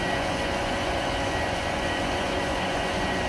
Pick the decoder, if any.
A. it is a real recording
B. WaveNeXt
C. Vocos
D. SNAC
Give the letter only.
C